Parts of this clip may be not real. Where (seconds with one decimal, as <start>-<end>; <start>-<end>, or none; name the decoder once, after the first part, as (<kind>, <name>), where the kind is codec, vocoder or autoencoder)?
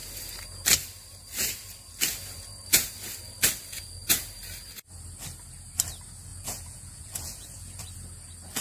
6.3-7.8 (vocoder, Vocos)